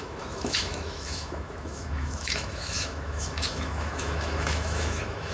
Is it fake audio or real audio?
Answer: fake